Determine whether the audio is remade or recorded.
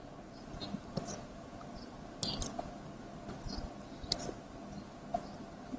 recorded